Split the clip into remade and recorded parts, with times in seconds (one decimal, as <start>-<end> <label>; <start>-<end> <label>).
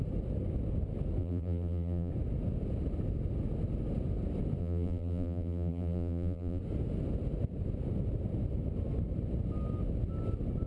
0.0-1.2 recorded; 1.2-2.1 remade; 2.1-4.6 recorded; 4.6-6.6 remade; 6.6-10.7 recorded